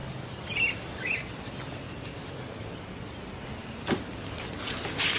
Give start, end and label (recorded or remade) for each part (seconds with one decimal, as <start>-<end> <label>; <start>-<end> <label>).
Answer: 0.0-3.1 remade; 3.1-3.6 recorded; 3.6-4.5 remade; 4.5-5.2 recorded